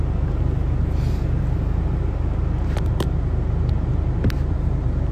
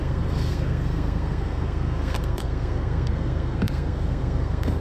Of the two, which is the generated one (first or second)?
second